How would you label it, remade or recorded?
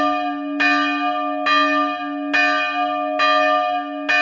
recorded